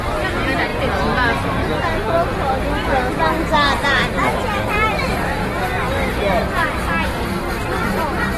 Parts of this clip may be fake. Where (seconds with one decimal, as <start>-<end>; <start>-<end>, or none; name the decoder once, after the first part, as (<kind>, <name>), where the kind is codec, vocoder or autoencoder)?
none